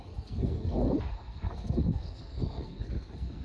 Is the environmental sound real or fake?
fake